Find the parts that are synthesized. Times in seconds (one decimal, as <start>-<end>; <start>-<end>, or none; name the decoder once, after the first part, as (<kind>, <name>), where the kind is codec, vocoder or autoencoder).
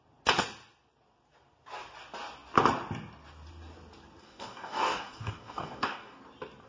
4.2-6.2 (codec, DAC)